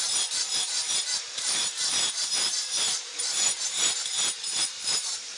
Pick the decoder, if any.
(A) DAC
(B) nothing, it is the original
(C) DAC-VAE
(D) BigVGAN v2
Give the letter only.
D